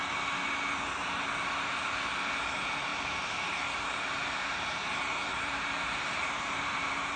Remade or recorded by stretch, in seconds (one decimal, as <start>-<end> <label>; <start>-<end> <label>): 0.0-2.9 recorded; 2.9-7.2 remade